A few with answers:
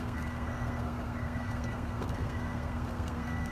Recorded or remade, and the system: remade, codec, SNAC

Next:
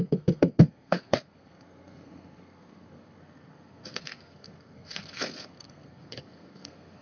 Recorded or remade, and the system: remade, codec, SNAC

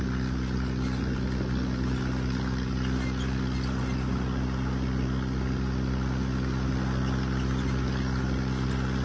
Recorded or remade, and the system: recorded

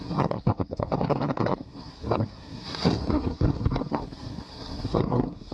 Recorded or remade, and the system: remade, codec, SNAC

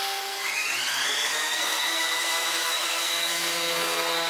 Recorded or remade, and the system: remade, codec, SNAC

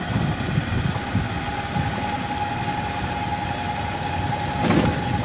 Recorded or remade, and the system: recorded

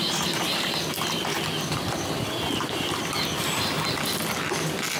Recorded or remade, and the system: recorded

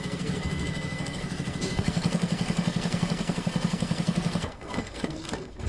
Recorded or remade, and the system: remade, codec, SNAC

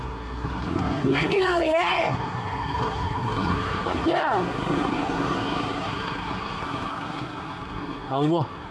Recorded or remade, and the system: remade, codec, SNAC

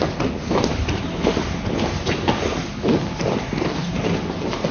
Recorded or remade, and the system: recorded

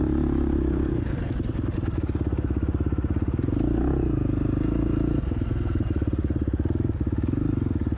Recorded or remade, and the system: recorded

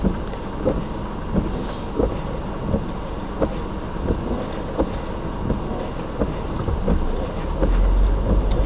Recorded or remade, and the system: recorded